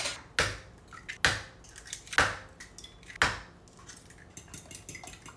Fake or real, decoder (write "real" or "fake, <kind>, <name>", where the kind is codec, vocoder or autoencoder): real